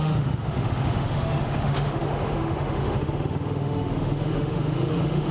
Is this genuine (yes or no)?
no